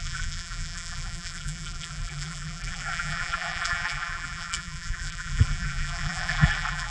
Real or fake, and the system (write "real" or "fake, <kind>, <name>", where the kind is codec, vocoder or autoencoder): fake, vocoder, BigVGAN v2